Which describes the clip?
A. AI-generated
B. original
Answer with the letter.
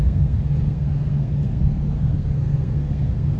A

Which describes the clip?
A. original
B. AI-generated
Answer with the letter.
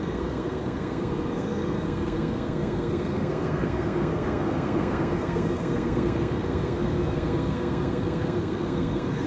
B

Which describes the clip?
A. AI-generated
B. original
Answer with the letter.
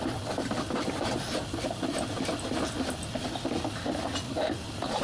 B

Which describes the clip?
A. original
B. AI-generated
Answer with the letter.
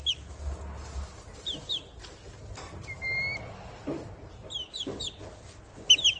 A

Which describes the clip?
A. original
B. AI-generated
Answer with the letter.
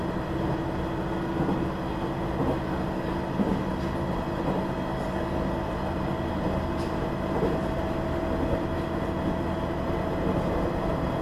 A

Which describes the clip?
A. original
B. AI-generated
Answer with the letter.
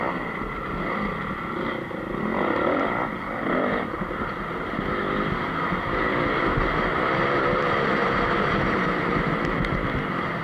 A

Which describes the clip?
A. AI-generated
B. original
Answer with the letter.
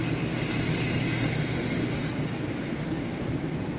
B